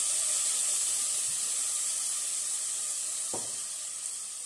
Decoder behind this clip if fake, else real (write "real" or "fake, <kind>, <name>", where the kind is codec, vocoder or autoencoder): real